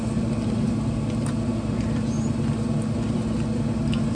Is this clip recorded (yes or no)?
yes